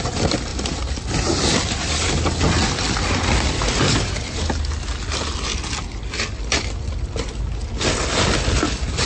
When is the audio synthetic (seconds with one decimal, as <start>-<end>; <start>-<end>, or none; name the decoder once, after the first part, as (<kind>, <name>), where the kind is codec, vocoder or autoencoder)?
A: none